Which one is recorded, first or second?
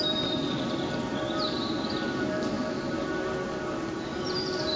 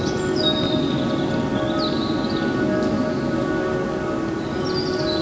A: second